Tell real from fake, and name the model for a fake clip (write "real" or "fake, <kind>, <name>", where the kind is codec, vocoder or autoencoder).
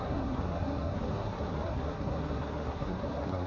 fake, codec, SNAC